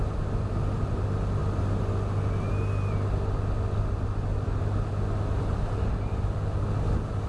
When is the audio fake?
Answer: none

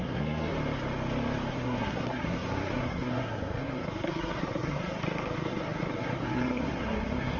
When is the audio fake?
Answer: 0.0-0.5 (codec, SNAC); 1.5-7.4

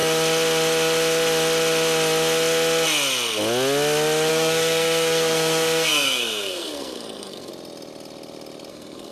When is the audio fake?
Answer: 4.3-7.5 (codec, SNAC); 8.7-9.1

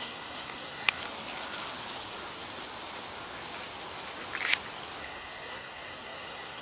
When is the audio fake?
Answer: 0.0-1.0 (codec, SNAC); 5.0-6.6